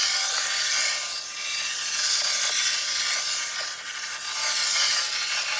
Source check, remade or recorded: recorded